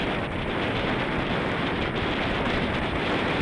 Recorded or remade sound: recorded